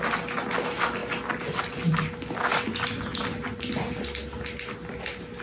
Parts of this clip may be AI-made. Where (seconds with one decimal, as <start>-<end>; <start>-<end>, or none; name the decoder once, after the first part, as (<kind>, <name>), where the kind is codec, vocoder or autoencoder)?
none

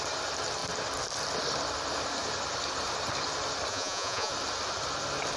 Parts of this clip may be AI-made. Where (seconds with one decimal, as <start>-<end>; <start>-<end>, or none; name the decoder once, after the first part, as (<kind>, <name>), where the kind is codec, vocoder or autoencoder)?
3.7-4.3 (vocoder, Vocos)

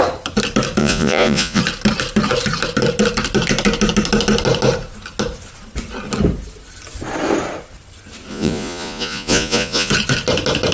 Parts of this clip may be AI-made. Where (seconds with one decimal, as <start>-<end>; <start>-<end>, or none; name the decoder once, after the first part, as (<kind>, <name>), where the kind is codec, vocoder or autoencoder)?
0.8-1.6 (vocoder, Vocos); 8.3-9.9

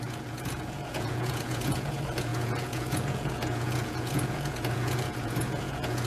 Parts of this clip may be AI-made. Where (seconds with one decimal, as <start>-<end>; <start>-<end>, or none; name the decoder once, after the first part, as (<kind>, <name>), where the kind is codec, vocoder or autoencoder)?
0.0-6.1 (vocoder, Vocos)

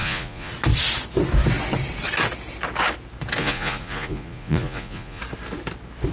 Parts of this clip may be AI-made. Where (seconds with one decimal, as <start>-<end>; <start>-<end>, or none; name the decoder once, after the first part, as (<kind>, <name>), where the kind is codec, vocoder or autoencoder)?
0.0-0.5 (vocoder, Vocos); 3.4-5.2